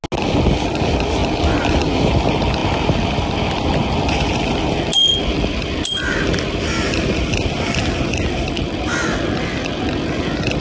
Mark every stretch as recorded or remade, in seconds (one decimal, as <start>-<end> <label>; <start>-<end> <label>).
0.0-10.6 recorded